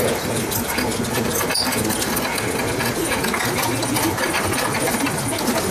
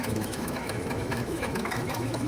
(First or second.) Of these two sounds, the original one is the first